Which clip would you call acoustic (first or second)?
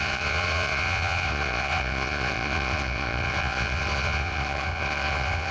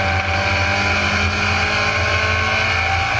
second